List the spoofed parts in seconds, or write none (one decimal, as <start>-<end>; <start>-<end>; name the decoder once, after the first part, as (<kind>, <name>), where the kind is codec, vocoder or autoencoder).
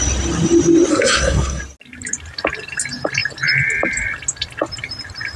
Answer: 0.9-1.6 (codec, SNAC)